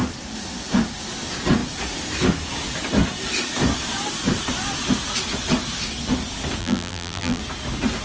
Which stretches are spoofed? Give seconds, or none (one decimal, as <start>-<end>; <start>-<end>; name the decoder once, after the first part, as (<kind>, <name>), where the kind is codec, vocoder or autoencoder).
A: 6.6-7.4 (vocoder, BigVGAN v2)